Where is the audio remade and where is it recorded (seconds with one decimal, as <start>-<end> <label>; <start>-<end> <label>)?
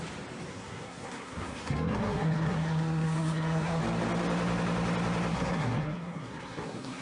0.0-0.5 recorded; 0.5-3.8 remade; 3.8-5.3 recorded; 5.3-7.0 remade